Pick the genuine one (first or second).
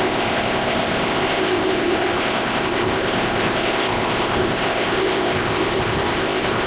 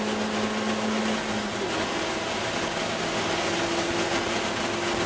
second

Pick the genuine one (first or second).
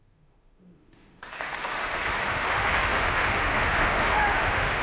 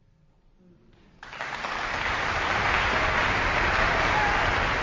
second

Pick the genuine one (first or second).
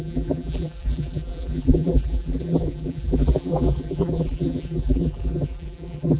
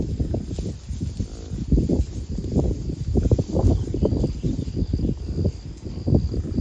second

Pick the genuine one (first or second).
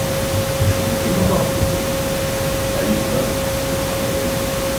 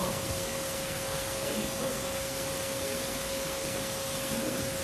first